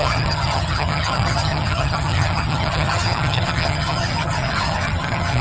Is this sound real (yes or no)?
no